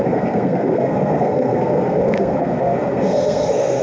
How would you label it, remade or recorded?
remade